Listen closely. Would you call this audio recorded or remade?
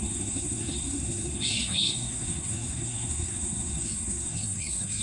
remade